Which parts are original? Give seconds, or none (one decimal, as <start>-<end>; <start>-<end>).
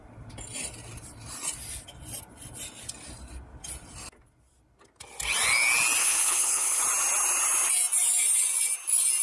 0.0-6.0; 6.8-9.2